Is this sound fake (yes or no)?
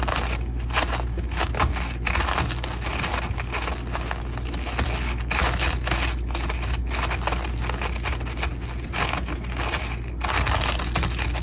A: no